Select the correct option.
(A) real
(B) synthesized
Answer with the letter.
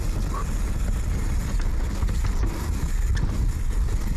A